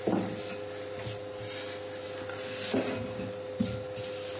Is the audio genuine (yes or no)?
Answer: yes